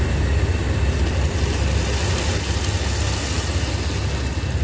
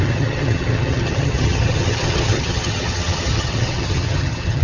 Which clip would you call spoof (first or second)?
second